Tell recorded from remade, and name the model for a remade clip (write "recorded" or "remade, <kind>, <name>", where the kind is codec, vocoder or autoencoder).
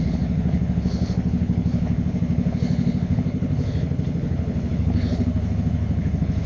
remade, codec, HILCodec